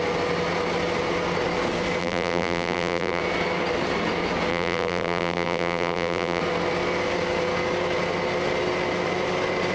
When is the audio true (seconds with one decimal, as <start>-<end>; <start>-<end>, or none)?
0.0-2.0; 3.2-4.5; 6.4-9.7